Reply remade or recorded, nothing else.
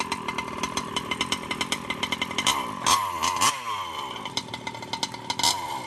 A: recorded